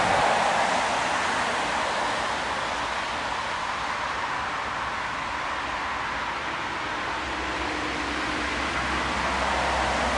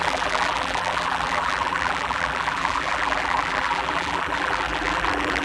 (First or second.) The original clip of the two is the first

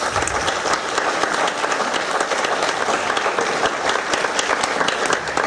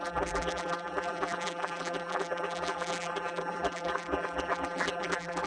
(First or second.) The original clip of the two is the first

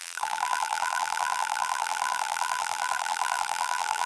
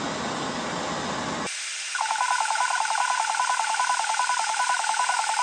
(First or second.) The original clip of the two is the second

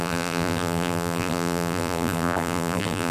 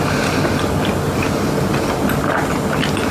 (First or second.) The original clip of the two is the second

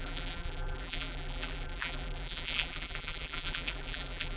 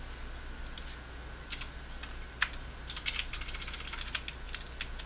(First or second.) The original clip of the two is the second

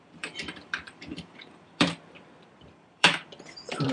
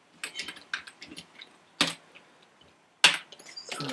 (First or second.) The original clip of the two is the second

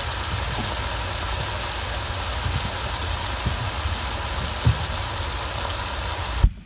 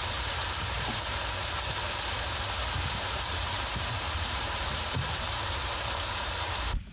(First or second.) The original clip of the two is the first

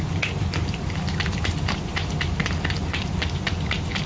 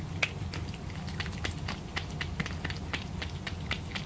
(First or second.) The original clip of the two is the second